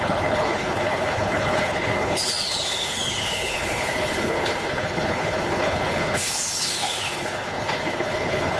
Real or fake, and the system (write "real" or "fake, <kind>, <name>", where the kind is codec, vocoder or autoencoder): fake, codec, HILCodec